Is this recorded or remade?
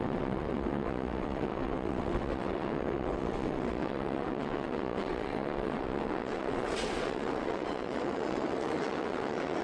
remade